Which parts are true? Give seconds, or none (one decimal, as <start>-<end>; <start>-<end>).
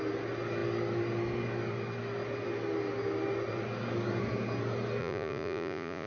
0.0-5.0